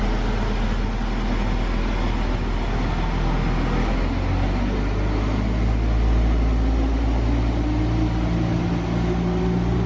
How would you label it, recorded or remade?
recorded